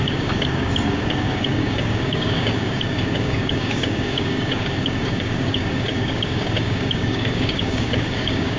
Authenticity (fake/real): fake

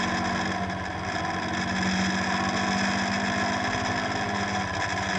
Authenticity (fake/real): real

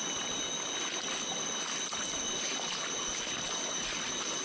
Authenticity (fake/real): real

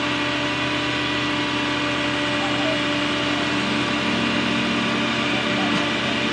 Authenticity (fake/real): real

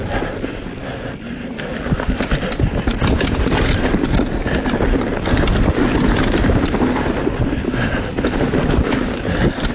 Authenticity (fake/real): real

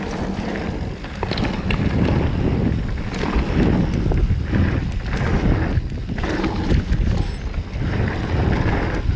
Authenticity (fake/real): real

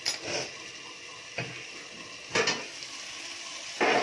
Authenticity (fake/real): real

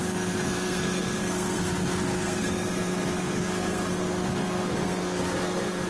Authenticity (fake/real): fake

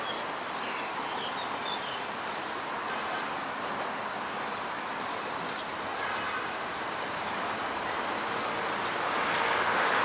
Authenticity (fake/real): real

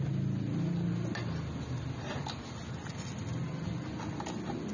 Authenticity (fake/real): real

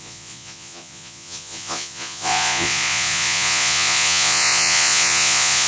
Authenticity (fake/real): fake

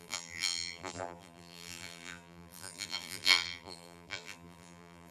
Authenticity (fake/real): fake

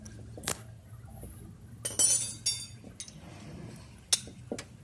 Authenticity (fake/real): real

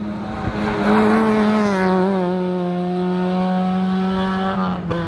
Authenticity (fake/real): real